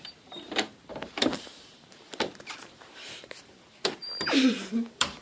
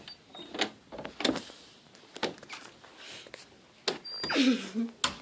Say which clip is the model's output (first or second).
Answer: first